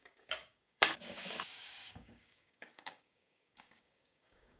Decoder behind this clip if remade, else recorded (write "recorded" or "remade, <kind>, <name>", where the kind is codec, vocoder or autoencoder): remade, codec, DAC